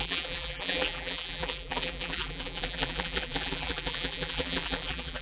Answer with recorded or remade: remade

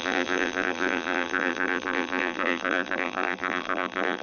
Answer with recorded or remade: remade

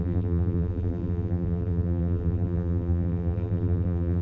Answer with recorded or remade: remade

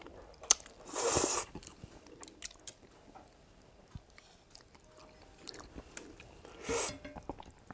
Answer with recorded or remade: recorded